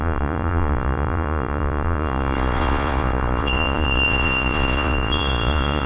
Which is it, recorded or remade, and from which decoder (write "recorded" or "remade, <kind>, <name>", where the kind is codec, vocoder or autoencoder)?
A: remade, vocoder, Vocos